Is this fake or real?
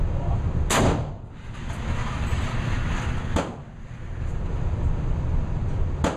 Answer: real